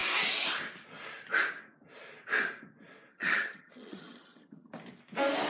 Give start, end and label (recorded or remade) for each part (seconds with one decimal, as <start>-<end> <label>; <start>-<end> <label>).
0.0-3.1 recorded; 3.1-4.7 remade; 4.7-5.5 recorded